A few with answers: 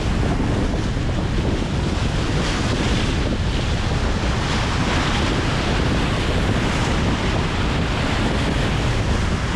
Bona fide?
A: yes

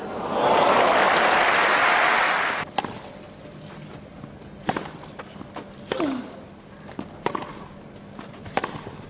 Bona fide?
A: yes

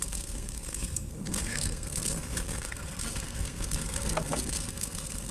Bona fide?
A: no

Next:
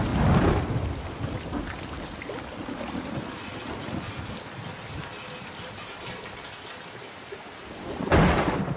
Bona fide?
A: yes